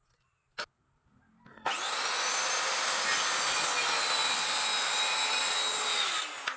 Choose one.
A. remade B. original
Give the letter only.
B